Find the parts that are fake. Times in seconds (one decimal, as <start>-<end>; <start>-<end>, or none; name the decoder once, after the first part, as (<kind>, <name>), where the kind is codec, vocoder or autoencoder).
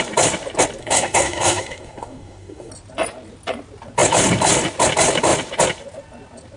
0.8-2.7 (codec, SNAC)